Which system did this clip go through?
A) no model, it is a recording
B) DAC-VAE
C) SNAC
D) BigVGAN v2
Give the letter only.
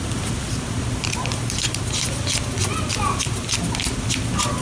A